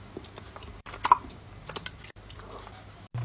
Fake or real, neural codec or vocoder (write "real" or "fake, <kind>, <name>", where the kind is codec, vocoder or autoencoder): real